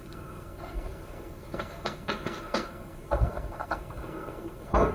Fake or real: fake